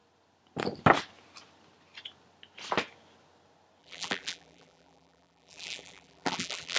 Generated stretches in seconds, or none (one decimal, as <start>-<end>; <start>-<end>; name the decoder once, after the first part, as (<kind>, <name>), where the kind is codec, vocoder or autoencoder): 3.8-6.8 (vocoder, BigVGAN v2)